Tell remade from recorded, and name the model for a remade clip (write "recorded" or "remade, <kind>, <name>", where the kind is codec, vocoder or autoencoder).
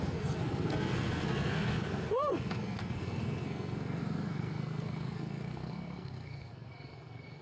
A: remade, codec, SNAC